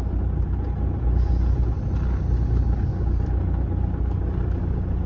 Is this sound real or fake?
real